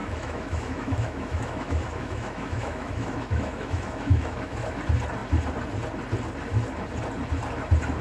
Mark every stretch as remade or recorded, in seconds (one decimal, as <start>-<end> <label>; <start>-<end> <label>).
0.0-4.8 remade; 4.8-8.0 recorded